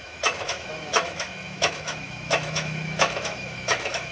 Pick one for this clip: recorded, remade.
remade